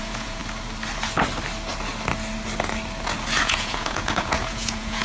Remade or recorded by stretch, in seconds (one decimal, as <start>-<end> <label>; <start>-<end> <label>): 0.0-0.4 remade; 0.4-3.4 recorded; 3.4-5.0 remade